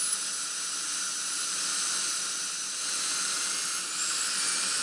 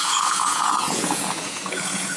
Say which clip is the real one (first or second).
first